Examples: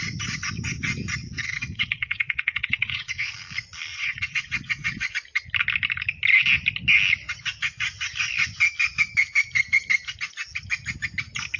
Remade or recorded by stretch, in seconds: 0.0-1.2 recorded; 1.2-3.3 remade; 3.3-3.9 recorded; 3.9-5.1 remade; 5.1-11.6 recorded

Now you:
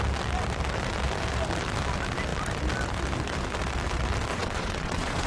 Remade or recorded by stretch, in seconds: 0.0-4.3 recorded; 4.3-5.3 remade

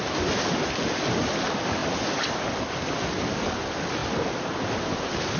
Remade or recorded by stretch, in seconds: 0.0-5.4 recorded

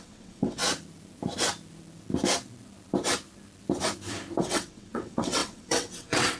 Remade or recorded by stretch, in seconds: 0.0-0.6 remade; 0.6-4.4 recorded; 4.4-6.4 remade

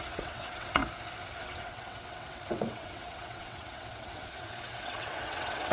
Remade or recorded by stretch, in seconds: 0.0-0.8 remade; 0.8-1.4 recorded; 1.4-5.7 remade